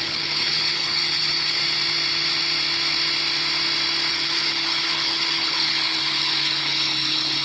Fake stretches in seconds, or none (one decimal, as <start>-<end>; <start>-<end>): 0.0-1.6; 4.1-7.4